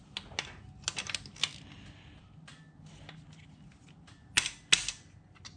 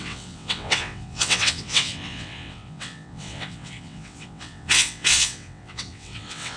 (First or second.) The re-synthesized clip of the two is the second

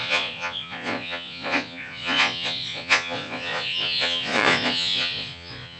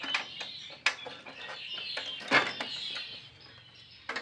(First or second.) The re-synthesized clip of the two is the first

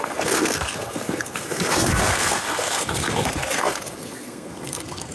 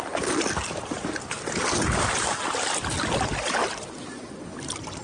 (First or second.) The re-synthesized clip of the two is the first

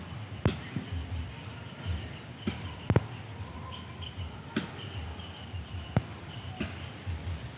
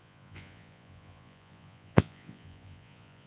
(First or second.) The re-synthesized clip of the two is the second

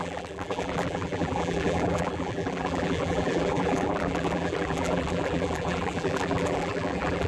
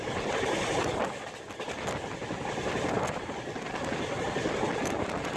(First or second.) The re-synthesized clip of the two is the first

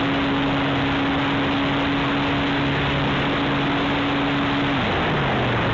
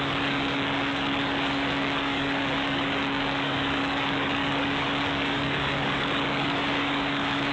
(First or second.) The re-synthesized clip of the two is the second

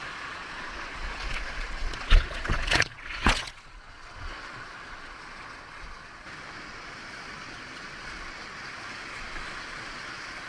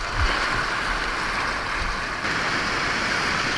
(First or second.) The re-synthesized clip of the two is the first